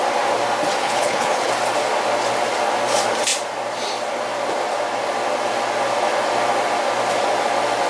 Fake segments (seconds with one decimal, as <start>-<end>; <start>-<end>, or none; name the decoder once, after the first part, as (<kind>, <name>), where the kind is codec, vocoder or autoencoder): 0.8-1.5 (codec, HILCodec)